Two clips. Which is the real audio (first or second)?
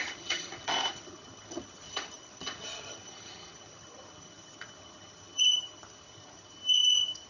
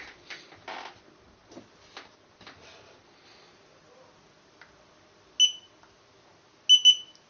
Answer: second